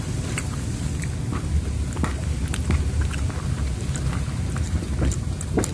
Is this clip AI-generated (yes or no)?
no